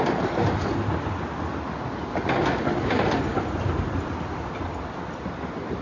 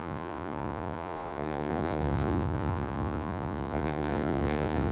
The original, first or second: first